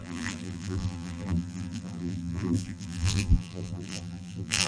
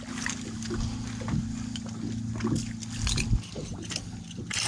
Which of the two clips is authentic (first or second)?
second